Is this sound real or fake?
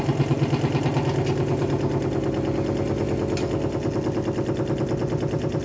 real